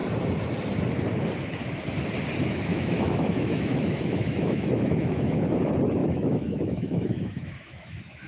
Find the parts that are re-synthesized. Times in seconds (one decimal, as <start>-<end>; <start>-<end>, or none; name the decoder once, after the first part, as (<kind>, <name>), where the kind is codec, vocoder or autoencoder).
2.7-5.6 (autoencoder, DAC-VAE); 6.0-8.3